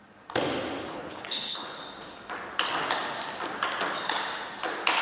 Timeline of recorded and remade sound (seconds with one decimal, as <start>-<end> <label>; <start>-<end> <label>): 0.0-0.9 recorded; 0.9-1.8 remade; 1.8-5.0 recorded